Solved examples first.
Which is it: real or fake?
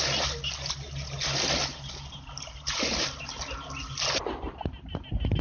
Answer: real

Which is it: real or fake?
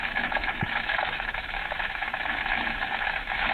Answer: fake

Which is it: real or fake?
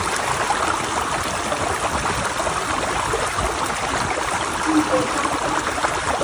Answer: real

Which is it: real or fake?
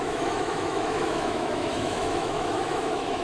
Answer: fake